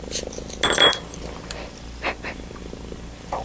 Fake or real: real